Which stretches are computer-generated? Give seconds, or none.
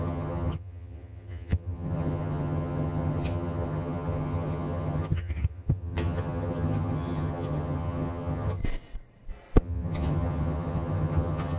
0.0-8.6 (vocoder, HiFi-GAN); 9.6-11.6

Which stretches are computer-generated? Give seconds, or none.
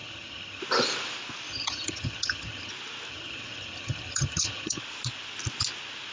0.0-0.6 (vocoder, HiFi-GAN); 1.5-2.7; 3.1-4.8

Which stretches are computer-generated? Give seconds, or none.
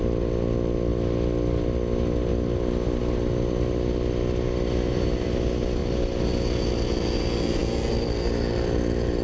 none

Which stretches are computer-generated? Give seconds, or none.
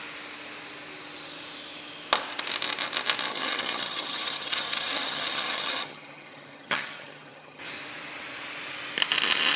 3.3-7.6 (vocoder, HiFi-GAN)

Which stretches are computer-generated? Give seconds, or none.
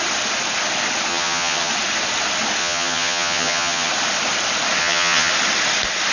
1.1-1.7 (vocoder, HiFi-GAN); 2.6-3.9; 4.8-5.3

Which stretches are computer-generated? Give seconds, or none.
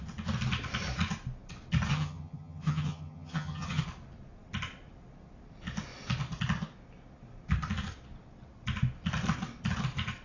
1.9-3.8 (vocoder, HiFi-GAN)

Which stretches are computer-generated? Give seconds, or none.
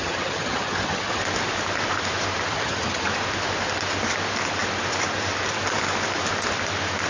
0.0-1.2 (vocoder, HiFi-GAN); 2.5-3.1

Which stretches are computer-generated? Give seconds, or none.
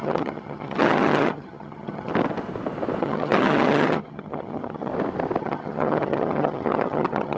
0.0-2.1 (vocoder, HiFi-GAN); 3.0-4.9; 5.4-7.4